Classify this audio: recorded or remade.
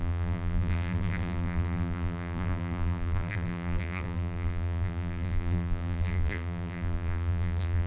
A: remade